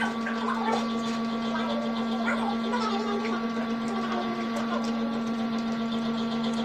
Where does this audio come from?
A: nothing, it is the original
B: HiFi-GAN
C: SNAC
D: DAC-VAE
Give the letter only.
A